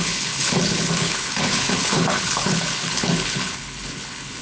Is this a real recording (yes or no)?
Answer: no